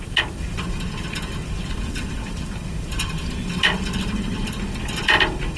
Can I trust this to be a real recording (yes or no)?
yes